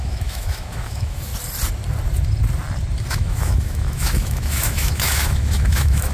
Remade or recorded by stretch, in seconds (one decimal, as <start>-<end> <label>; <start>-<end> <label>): 0.0-1.3 remade; 1.3-3.1 recorded; 3.1-6.1 remade